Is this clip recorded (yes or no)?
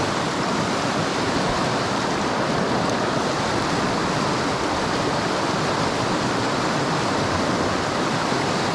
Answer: yes